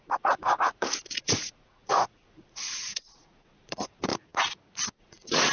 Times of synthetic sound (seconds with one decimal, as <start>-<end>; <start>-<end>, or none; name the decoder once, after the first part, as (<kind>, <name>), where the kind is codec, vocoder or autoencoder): 0.0-4.1 (vocoder, Vocos); 4.9-5.5